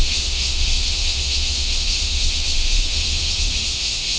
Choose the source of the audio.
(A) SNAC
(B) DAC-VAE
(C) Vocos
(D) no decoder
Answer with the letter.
B